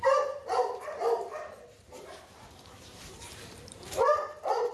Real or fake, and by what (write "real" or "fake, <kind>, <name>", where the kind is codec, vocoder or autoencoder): fake, vocoder, BigVGAN v2